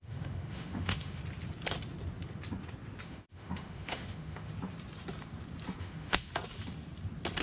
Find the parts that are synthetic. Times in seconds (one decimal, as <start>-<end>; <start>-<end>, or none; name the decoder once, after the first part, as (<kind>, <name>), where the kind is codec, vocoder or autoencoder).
0.0-1.2 (autoencoder, DAC-VAE); 3.0-4.5; 5.8-6.3